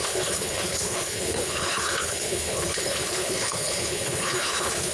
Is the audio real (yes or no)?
no